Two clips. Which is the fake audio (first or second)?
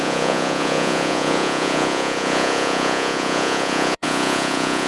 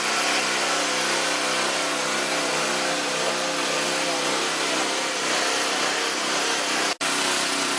first